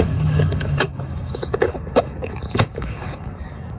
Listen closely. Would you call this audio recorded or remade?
remade